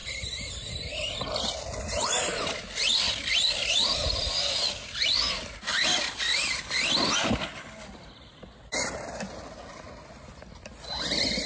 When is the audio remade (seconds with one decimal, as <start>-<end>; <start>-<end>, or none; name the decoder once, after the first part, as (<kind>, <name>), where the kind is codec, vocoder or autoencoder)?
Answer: 2.9-4.2 (vocoder, BigVGAN v2); 5.7-6.8